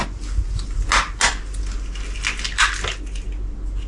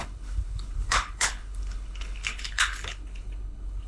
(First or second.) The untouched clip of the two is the first